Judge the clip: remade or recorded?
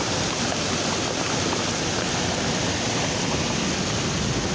recorded